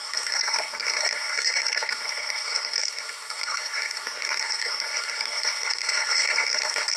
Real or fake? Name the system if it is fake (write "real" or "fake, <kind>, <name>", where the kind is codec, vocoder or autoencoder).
fake, codec, SNAC